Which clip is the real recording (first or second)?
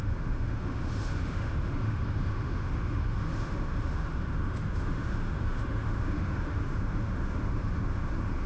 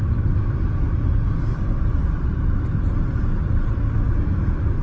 second